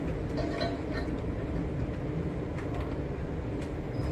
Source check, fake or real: real